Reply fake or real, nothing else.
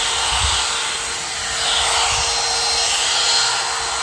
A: real